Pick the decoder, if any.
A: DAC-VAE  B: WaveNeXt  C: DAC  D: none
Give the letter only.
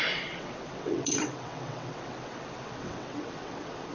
B